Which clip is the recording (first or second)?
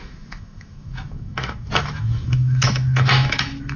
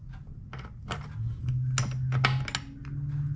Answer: second